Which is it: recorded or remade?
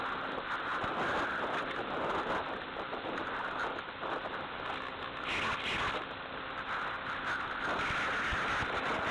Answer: recorded